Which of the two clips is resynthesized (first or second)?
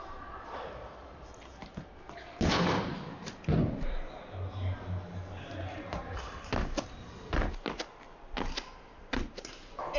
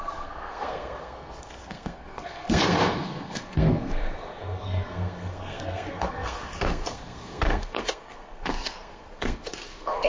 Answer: second